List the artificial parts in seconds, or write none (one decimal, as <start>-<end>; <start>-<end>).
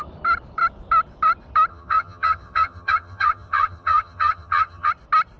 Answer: 1.7-4.9